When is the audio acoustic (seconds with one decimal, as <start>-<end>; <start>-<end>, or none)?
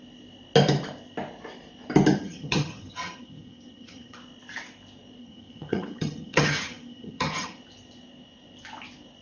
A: 0.0-2.2; 4.2-5.2; 7.6-9.2